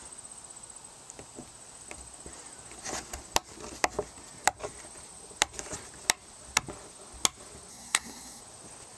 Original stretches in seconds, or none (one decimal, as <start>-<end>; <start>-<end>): 0.0-7.7; 8.4-9.0